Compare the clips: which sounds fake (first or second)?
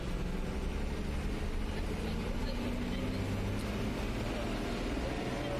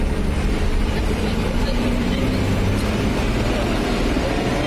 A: second